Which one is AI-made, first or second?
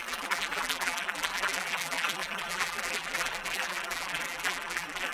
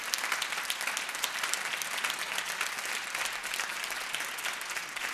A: first